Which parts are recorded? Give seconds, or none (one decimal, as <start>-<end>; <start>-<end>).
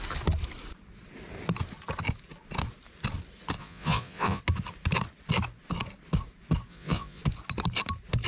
0.0-3.6; 4.4-6.7; 7.2-8.3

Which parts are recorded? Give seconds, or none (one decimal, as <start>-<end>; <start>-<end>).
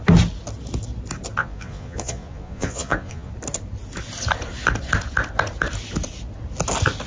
0.0-1.4; 3.3-7.1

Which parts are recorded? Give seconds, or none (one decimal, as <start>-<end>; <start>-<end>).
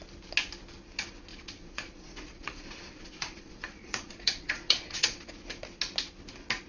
0.0-1.3; 5.3-6.7